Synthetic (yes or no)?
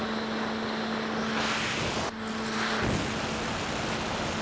no